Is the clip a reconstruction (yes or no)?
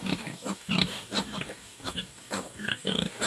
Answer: yes